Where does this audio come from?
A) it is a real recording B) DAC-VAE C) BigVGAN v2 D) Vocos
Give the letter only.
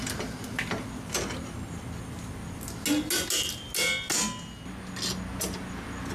A